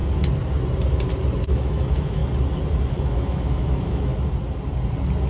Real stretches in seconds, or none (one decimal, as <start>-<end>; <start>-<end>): 0.0-1.4; 2.2-2.9; 4.1-5.3